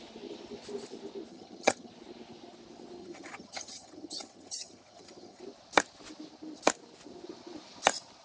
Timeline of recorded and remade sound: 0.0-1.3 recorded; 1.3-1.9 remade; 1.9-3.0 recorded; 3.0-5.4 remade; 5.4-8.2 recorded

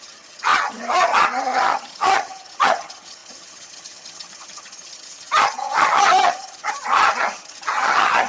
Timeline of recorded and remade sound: 0.0-8.3 remade

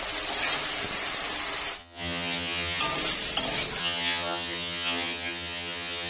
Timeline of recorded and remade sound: 0.0-1.8 recorded; 1.8-2.8 remade; 2.8-3.8 recorded; 3.8-6.1 remade

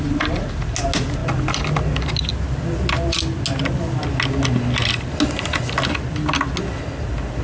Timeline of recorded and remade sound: 0.0-7.4 recorded